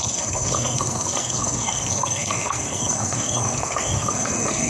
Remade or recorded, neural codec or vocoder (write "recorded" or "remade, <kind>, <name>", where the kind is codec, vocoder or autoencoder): remade, codec, SNAC